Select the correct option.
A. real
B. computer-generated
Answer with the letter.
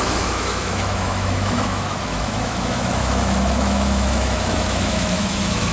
B